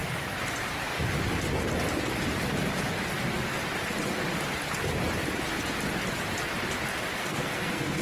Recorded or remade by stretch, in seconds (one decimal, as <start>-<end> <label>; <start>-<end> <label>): 0.0-7.2 recorded; 7.2-8.0 remade